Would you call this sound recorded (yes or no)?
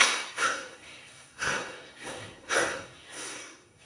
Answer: no